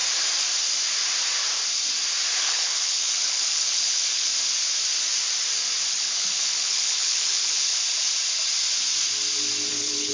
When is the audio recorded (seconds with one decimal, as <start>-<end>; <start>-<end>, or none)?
0.0-2.4; 4.3-5.9; 7.7-9.7